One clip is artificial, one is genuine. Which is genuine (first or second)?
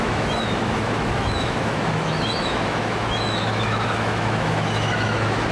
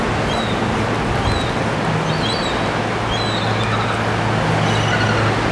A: second